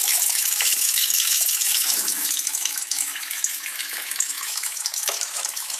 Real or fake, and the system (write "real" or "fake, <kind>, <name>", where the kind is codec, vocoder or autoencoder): fake, autoencoder, DAC-VAE